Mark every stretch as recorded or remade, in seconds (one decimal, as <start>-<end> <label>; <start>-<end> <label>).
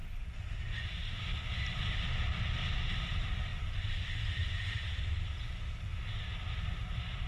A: 0.0-7.3 recorded